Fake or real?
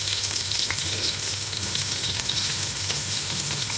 fake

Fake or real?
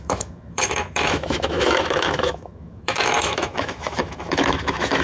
fake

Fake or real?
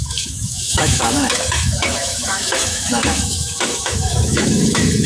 fake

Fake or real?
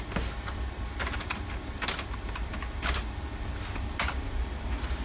real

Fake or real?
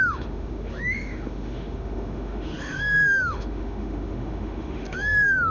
fake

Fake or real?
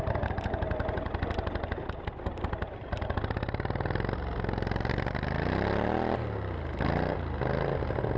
real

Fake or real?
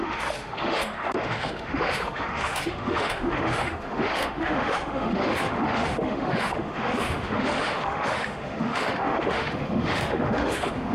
fake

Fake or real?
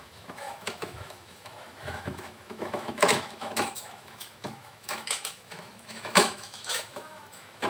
fake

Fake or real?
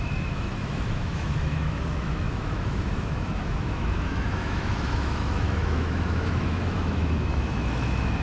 fake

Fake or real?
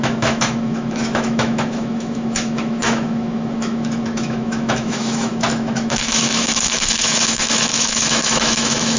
fake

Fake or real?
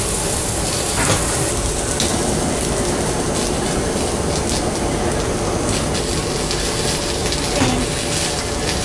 real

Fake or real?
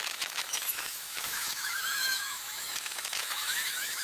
fake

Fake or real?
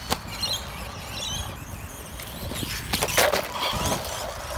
real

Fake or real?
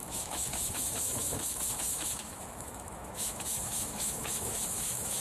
fake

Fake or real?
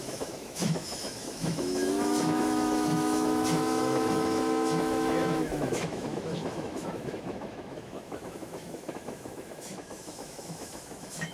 fake